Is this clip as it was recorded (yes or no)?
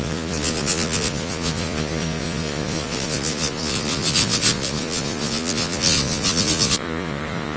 no